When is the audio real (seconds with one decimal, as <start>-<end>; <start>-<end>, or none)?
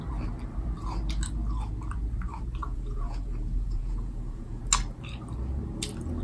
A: 0.0-2.6; 4.6-6.2